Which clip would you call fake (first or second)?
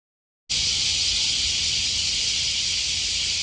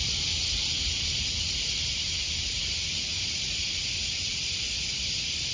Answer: second